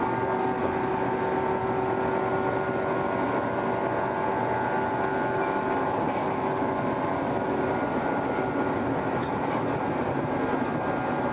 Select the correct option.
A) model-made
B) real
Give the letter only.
B